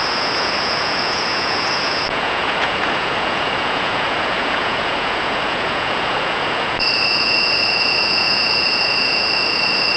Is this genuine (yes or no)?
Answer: no